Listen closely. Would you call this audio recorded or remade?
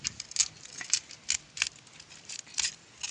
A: recorded